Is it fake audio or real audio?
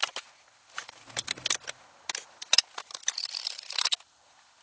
real